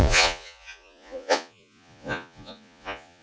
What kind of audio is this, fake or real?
fake